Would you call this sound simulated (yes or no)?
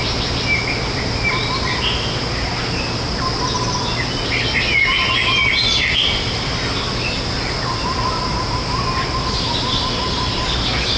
no